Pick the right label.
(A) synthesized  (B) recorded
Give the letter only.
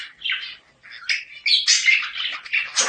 B